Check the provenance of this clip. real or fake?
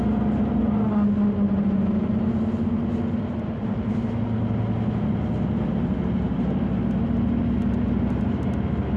real